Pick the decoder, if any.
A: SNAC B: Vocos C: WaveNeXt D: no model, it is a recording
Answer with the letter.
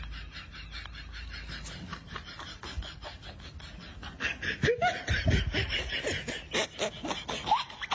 D